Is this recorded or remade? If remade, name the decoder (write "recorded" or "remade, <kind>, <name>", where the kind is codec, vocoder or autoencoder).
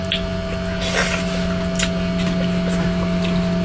recorded